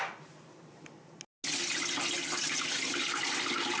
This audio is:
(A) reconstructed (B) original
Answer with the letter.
B